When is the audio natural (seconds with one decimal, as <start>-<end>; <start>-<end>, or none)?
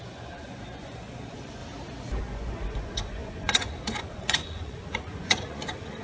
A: 1.6-2.2